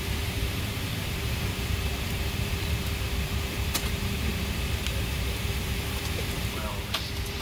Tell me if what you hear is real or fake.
fake